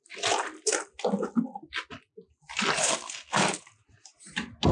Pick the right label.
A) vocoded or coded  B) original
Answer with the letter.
B